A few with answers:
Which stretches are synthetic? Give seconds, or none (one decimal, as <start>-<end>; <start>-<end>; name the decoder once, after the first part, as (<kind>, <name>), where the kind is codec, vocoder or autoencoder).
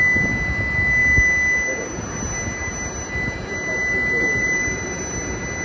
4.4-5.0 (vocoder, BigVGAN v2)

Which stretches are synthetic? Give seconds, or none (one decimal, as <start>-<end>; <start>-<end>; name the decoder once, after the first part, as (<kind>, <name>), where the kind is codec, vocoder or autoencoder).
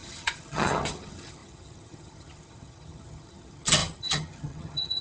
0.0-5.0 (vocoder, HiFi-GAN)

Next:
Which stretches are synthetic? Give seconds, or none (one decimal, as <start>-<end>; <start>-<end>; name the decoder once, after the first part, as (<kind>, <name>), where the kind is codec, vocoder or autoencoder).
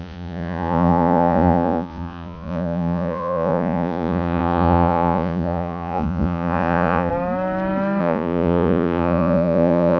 0.0-7.1 (vocoder, Vocos); 8.0-10.0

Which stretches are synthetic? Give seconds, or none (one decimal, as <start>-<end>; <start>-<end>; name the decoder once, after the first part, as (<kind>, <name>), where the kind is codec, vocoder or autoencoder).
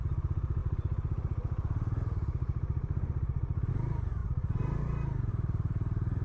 0.0-6.2 (vocoder, BigVGAN v2)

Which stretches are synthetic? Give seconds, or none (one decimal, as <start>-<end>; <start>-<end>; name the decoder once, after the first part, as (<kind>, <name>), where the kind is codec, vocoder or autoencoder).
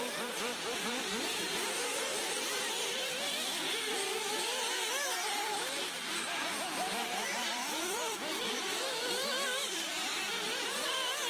0.0-10.1 (vocoder, BigVGAN v2)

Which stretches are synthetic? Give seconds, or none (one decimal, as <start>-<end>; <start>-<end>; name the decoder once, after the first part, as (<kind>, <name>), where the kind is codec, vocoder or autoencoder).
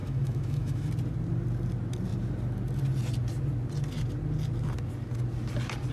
0.0-0.9 (autoencoder, DAC-VAE)